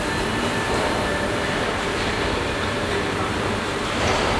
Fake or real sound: fake